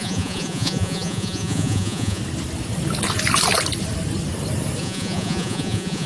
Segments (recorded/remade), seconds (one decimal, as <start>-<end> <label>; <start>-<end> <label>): 0.0-2.2 remade; 2.2-4.8 recorded; 4.8-6.1 remade